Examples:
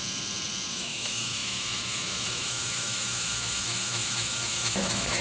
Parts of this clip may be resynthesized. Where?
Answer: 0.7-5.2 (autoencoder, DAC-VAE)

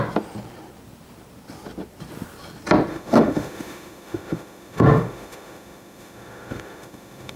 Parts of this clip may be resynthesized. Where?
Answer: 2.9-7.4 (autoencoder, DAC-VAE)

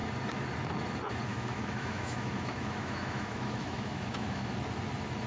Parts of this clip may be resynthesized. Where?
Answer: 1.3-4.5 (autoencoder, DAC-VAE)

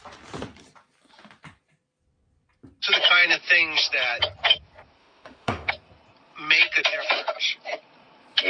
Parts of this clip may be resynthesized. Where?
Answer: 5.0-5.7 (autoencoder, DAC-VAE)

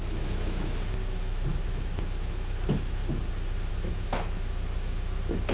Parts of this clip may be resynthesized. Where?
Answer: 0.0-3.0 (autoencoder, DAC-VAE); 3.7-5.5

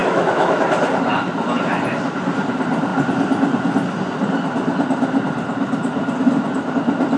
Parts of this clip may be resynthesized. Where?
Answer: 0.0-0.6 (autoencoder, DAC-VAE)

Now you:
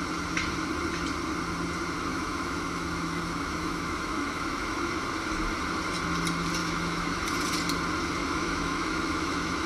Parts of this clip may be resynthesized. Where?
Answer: 2.1-4.9 (autoencoder, DAC-VAE); 6.6-7.2; 8.2-9.7

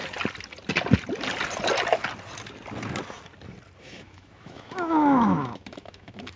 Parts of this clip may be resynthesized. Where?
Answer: 3.8-6.4 (autoencoder, DAC-VAE)